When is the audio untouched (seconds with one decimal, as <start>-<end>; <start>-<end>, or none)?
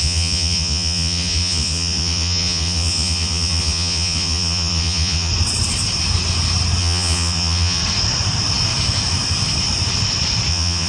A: 5.3-6.8; 7.8-10.5